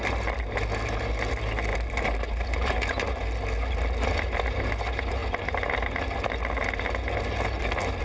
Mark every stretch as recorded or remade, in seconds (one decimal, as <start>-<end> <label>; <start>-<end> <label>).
0.0-8.0 recorded